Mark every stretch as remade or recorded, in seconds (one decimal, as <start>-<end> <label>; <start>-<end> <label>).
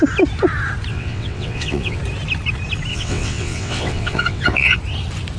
0.0-0.9 recorded; 0.9-2.0 remade; 2.0-2.9 recorded; 2.9-4.8 remade; 4.8-5.4 recorded